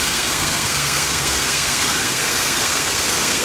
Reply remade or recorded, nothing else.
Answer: remade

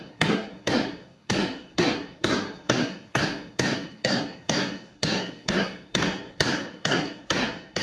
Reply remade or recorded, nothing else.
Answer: remade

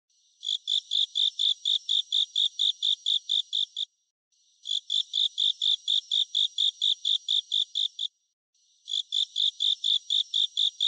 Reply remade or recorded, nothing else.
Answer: recorded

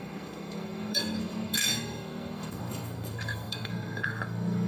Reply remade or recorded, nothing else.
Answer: remade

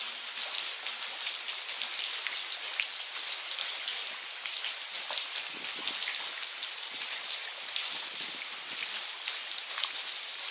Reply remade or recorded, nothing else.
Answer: recorded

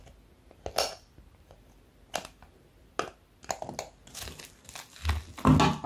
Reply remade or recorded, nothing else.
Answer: recorded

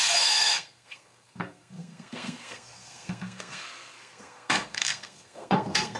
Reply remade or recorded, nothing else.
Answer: remade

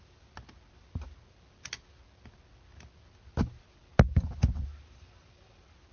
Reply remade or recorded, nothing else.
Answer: recorded